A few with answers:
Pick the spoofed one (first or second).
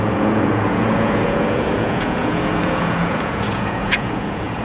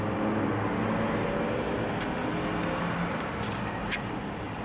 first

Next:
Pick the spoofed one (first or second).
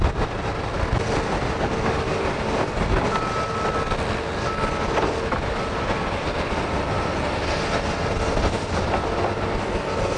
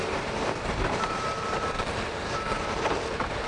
second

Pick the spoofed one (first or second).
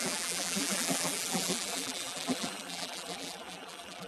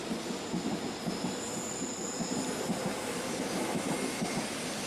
first